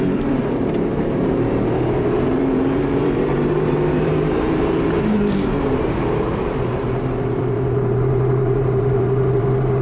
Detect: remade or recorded remade